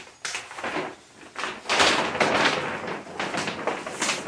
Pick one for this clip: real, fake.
real